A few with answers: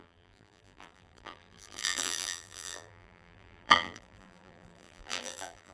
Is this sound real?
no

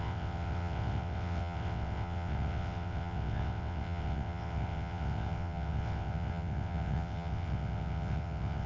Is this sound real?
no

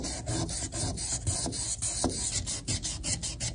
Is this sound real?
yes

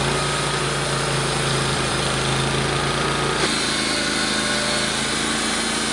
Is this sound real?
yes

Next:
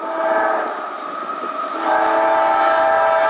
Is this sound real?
yes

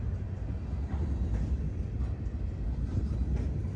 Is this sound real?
yes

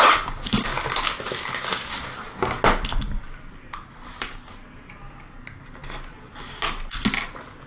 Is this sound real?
yes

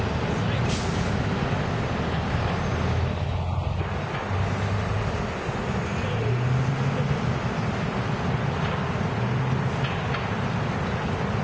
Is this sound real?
yes